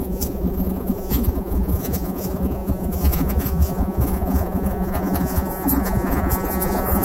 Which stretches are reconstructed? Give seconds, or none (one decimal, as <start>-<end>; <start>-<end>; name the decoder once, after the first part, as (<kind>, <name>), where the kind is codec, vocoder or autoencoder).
0.0-7.0 (vocoder, Vocos)